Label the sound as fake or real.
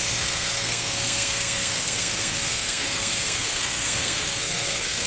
fake